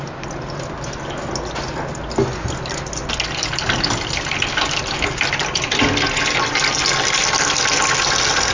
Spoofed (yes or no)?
no